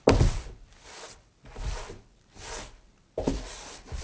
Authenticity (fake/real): real